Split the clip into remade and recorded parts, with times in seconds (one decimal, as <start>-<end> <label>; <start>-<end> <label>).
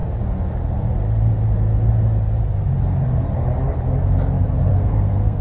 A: 0.0-4.7 recorded; 4.7-5.4 remade